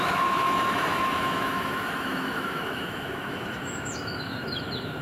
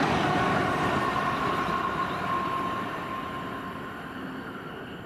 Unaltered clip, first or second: second